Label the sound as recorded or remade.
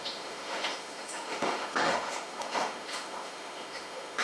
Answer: remade